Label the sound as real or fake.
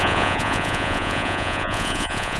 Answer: fake